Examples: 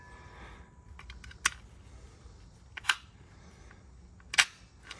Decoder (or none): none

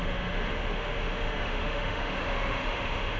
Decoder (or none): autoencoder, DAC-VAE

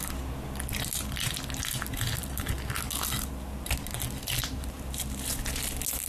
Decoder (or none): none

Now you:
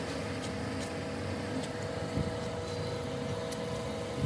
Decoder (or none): none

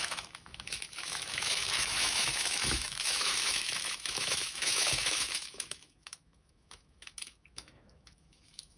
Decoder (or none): autoencoder, DAC-VAE